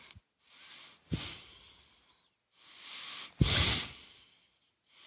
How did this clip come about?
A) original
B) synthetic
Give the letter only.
A